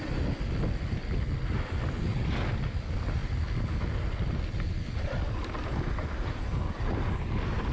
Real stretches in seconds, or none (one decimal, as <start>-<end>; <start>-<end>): 0.0-7.7